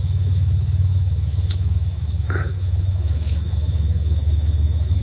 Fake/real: fake